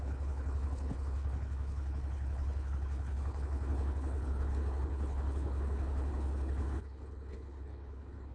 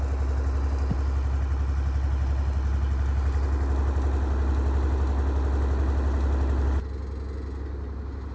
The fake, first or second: first